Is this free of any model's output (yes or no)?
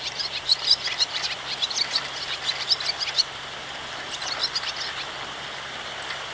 no